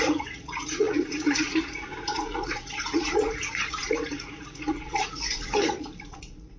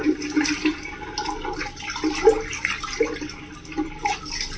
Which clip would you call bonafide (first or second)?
second